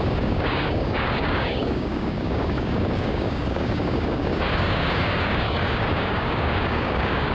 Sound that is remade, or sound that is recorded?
remade